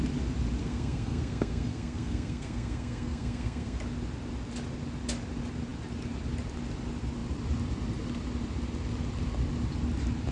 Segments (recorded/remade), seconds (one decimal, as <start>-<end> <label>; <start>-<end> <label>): 0.0-0.6 recorded; 0.6-3.8 remade; 3.8-10.3 recorded